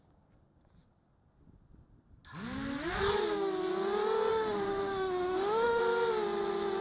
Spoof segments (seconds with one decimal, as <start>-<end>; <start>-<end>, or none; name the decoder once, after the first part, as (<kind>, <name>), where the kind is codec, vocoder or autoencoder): 4.3-5.8 (autoencoder, DAC-VAE)